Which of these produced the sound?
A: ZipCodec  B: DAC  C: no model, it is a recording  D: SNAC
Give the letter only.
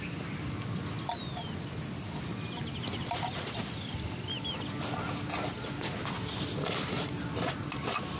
C